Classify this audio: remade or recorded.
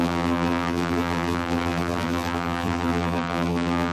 remade